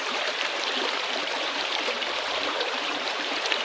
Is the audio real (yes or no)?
no